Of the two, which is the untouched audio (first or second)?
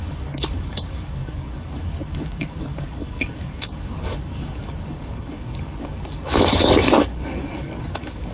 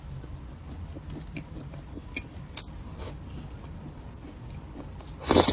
second